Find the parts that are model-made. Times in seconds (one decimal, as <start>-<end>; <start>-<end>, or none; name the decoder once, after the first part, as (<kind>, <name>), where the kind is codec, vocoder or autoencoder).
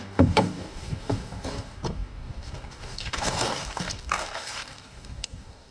0.0-5.7 (codec, DAC)